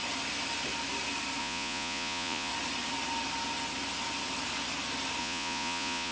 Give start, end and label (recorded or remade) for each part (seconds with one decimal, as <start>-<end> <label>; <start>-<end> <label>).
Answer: 0.0-1.4 recorded; 1.4-2.5 remade; 2.5-5.2 recorded; 5.2-6.1 remade